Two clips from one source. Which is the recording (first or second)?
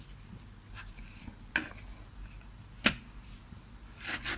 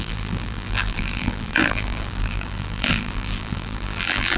first